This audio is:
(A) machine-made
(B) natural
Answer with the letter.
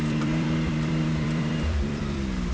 A